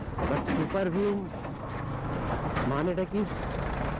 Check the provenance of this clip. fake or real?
real